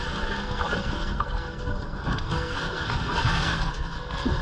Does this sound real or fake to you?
fake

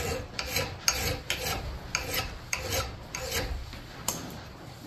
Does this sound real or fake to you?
real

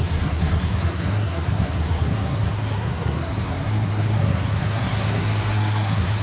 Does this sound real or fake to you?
fake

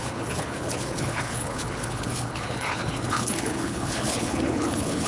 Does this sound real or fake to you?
fake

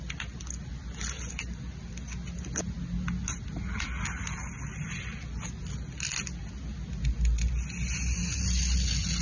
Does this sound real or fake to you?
real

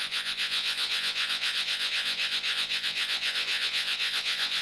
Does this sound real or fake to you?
fake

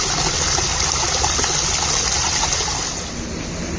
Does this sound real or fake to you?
real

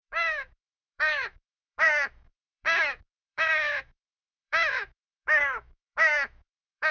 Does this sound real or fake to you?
fake